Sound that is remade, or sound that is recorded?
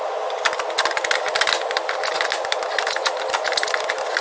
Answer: recorded